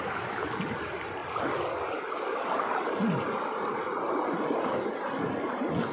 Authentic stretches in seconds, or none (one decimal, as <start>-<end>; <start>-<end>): 0.0-5.9